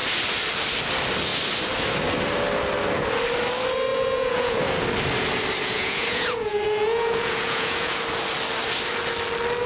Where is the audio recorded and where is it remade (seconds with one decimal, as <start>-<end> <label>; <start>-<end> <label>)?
0.0-3.9 recorded; 3.9-4.6 remade; 4.6-5.6 recorded; 5.6-8.0 remade; 8.0-9.7 recorded